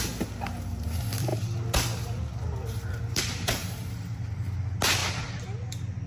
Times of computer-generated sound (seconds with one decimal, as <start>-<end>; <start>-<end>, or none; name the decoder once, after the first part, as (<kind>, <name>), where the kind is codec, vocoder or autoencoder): 3.6-4.6 (vocoder, BigVGAN v2)